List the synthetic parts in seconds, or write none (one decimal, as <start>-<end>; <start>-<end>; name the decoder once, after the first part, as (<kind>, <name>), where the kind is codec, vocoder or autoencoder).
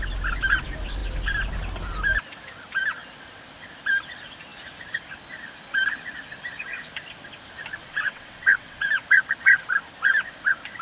7.8-8.9 (vocoder, WaveNeXt)